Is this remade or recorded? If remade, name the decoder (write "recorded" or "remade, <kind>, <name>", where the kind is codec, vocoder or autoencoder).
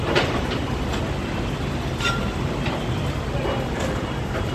recorded